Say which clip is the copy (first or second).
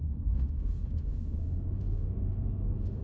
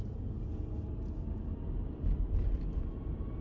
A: first